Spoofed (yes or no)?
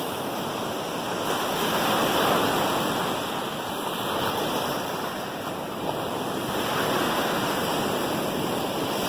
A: no